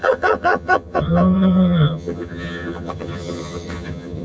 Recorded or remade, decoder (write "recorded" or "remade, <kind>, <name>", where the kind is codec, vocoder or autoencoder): remade, vocoder, HiFi-GAN